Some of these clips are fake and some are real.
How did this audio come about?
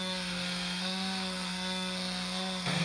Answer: fake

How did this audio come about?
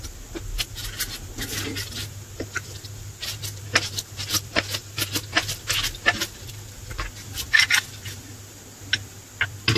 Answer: real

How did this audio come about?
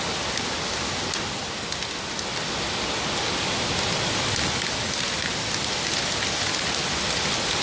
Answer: real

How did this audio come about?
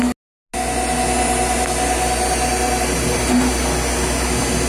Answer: real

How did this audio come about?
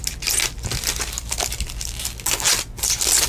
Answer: real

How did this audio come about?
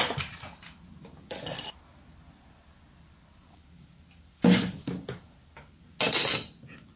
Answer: real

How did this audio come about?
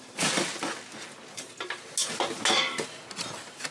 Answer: real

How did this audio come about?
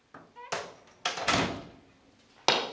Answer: real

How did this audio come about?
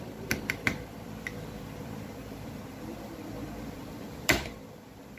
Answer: fake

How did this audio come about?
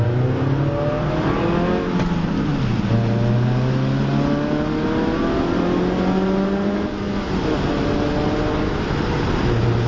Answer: real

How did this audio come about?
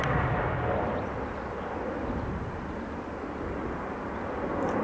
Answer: real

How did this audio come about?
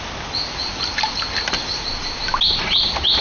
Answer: real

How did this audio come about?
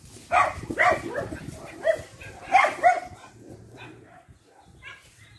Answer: real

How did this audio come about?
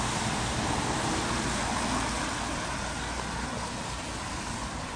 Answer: real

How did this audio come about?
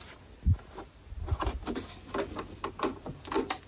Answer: real